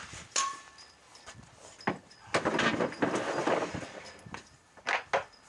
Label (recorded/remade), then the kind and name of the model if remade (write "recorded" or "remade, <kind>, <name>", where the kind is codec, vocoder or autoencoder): recorded